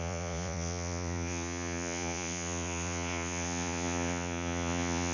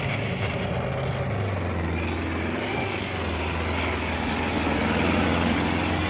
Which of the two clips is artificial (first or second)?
first